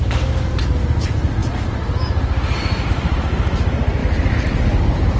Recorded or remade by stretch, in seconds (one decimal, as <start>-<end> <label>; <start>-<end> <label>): 0.0-5.2 recorded